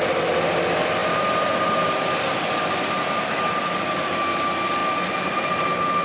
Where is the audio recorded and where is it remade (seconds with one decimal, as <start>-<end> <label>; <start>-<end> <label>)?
0.0-6.0 recorded